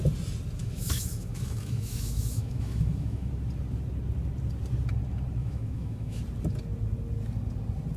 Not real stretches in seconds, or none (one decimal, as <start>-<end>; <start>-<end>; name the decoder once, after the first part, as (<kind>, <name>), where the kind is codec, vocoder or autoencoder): 0.6-3.3 (autoencoder, DAC-VAE); 5.4-6.2